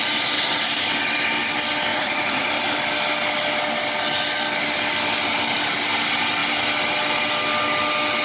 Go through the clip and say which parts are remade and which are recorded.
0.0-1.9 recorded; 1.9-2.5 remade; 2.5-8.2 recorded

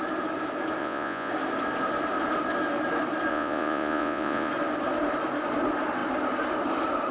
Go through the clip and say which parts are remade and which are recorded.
0.0-0.8 recorded; 0.8-1.3 remade; 1.3-3.3 recorded; 3.3-4.5 remade; 4.5-7.1 recorded

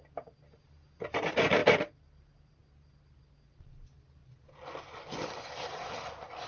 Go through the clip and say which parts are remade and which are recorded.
0.0-6.5 recorded

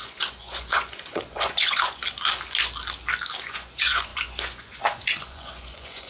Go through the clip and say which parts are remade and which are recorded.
0.0-2.0 remade; 2.0-3.4 recorded; 3.4-6.1 remade

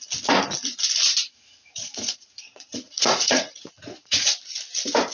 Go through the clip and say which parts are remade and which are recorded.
0.0-1.2 recorded; 1.2-4.3 remade; 4.3-5.1 recorded

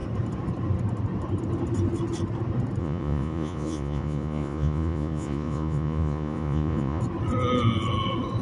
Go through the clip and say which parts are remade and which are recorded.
0.0-2.8 recorded; 2.8-7.0 remade; 7.0-8.4 recorded